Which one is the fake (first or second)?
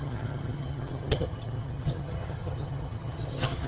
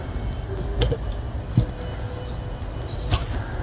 first